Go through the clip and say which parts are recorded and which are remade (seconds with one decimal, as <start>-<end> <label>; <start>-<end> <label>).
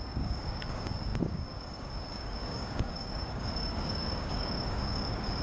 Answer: 0.0-5.4 remade